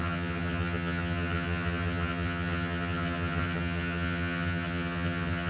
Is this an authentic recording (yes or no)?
no